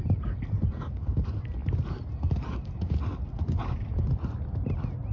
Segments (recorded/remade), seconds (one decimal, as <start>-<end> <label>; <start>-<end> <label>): 0.0-5.1 recorded